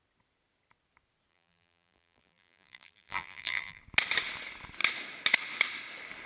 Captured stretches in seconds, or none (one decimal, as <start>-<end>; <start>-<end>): 0.0-1.3; 3.8-6.3